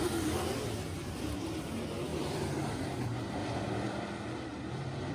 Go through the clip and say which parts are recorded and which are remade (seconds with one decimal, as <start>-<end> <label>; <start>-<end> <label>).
0.0-2.1 recorded; 2.1-3.0 remade; 3.0-3.4 recorded; 3.4-5.1 remade